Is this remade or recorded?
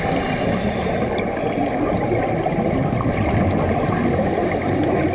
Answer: recorded